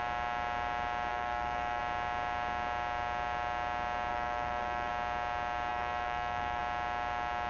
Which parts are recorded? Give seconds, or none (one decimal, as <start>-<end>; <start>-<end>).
0.0-1.1; 1.8-4.1; 4.9-5.7; 6.6-7.5